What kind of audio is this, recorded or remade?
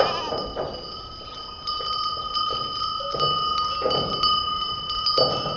recorded